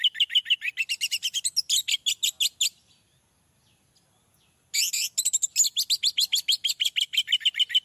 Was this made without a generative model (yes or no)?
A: yes